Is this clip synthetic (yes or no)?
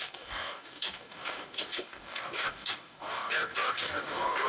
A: yes